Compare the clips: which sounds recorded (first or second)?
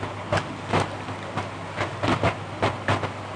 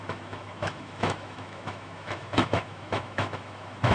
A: first